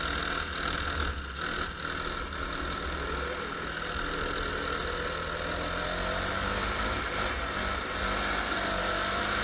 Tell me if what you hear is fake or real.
real